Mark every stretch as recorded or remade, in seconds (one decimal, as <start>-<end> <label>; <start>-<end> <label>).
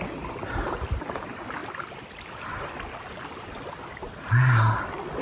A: 0.0-1.6 recorded; 1.6-2.6 remade; 2.6-5.2 recorded